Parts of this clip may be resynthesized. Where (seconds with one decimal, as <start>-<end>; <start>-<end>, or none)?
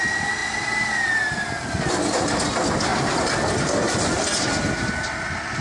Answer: none